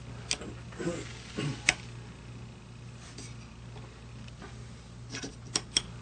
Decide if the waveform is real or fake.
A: real